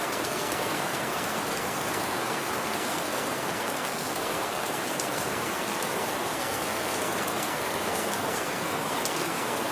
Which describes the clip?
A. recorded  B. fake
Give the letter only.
B